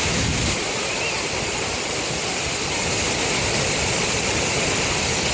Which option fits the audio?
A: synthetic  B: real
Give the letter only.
B